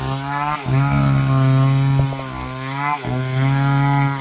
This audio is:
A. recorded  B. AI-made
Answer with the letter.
A